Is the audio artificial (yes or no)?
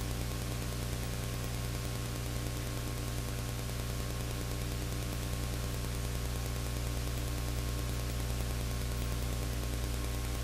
no